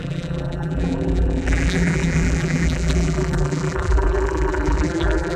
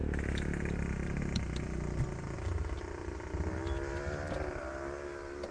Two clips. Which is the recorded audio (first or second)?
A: second